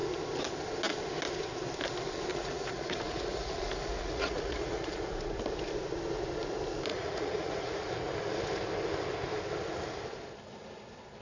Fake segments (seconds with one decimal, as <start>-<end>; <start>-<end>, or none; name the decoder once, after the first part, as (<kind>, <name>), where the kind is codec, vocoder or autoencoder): 2.3-5.0 (vocoder, Vocos); 6.9-7.8